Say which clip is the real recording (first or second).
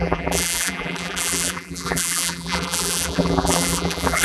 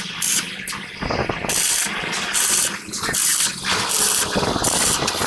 second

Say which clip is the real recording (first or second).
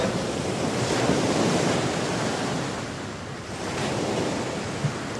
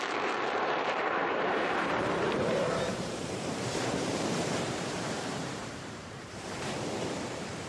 first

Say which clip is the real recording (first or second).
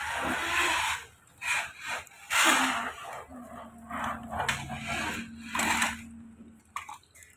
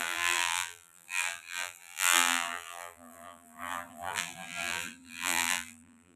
first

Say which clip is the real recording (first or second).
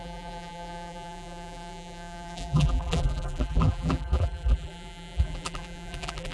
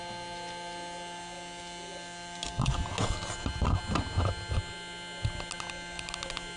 second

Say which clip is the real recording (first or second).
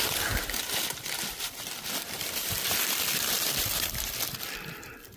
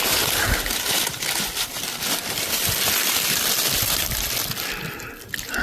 second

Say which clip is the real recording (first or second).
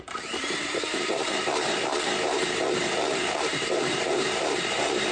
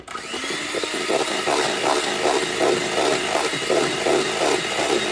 second